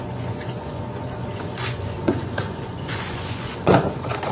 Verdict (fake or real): fake